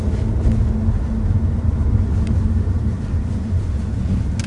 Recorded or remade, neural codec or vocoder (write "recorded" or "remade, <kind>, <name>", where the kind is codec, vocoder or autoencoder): recorded